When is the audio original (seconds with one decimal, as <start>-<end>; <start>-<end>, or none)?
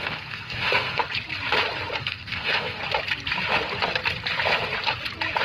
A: 1.0-2.0; 2.8-5.4